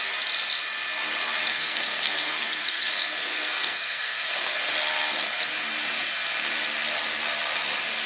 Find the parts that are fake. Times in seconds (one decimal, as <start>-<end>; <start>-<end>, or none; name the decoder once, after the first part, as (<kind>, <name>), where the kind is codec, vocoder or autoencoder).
1.5-4.7 (codec, SNAC)